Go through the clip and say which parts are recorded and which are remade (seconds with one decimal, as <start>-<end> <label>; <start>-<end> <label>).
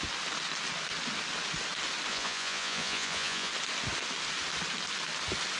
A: 0.0-2.1 recorded; 2.1-3.5 remade; 3.5-5.6 recorded